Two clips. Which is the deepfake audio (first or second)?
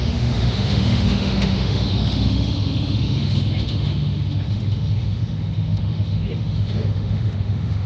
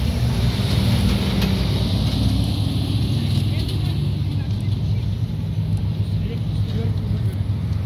first